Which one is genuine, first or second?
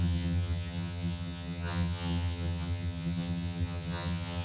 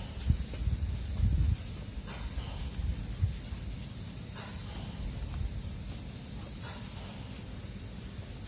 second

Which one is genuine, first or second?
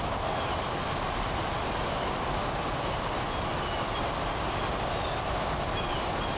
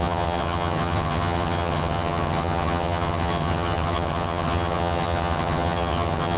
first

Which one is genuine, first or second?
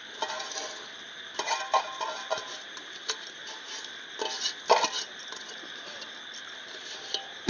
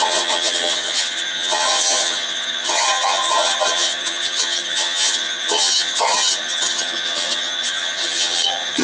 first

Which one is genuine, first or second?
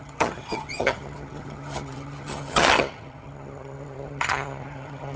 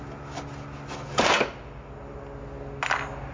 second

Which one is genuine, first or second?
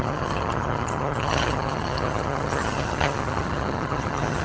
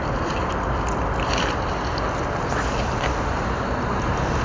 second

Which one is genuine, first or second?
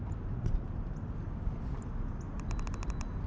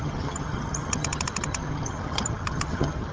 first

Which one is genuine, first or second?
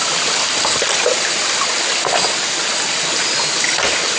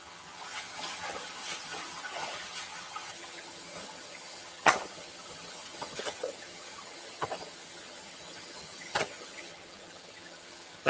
first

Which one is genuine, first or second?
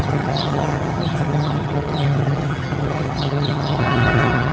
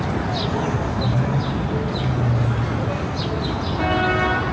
second